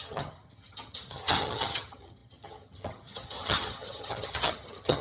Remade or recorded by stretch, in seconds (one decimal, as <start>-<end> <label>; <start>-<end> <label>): 0.0-5.0 remade